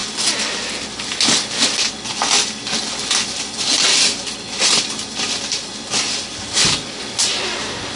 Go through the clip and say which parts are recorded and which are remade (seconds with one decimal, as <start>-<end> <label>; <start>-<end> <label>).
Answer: 0.0-8.0 recorded

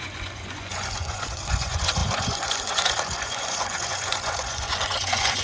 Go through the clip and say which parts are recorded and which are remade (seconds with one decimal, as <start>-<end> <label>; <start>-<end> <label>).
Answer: 0.0-5.4 remade

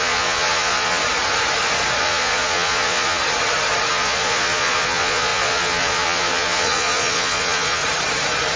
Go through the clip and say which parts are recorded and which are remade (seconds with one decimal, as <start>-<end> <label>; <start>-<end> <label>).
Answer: 0.0-1.0 remade; 1.0-2.0 recorded; 2.0-3.2 remade; 3.2-3.9 recorded; 3.9-7.8 remade; 7.8-8.6 recorded

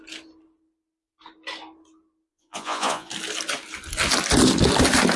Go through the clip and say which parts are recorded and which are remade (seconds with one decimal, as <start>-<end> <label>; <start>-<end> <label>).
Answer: 0.0-2.3 recorded; 2.3-3.1 remade; 3.1-5.2 recorded

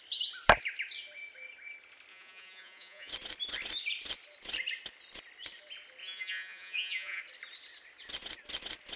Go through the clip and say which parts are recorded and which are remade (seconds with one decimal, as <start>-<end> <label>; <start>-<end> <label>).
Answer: 0.0-2.1 recorded; 2.1-3.1 remade; 3.1-6.0 recorded; 6.0-7.2 remade; 7.2-9.0 recorded